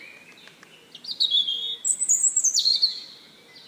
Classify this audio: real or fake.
real